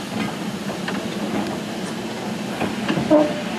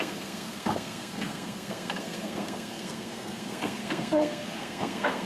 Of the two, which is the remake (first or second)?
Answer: second